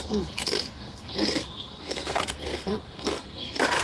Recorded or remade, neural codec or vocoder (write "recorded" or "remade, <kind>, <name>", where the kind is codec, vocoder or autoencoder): remade, codec, SNAC